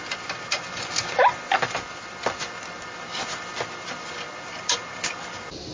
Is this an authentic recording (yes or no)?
no